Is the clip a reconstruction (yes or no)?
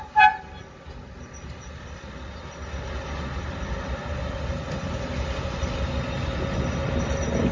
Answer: no